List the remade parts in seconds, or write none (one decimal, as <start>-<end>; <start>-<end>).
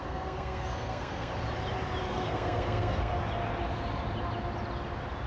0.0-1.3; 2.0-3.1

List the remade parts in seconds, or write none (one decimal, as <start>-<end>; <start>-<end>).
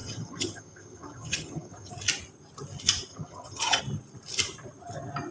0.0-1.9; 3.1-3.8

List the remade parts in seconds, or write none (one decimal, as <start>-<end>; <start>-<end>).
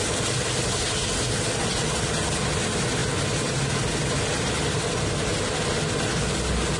none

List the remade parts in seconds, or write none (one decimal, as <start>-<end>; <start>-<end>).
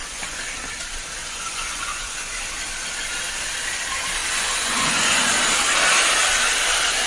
0.0-0.5; 1.2-2.4; 4.2-5.4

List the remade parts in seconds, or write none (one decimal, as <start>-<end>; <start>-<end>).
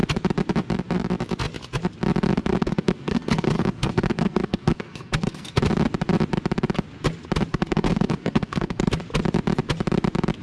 2.4-5.6; 7.5-8.9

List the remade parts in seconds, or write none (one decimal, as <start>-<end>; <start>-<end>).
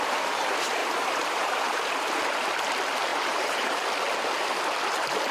0.8-1.9; 3.1-3.9